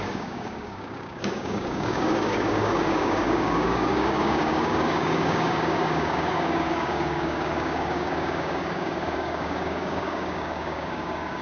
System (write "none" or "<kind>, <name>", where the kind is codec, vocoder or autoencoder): codec, DAC